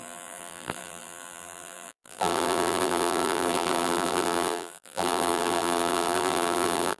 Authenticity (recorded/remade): remade